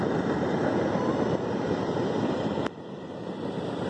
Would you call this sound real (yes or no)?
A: yes